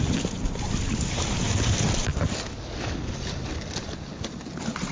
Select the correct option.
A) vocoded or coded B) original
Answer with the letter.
B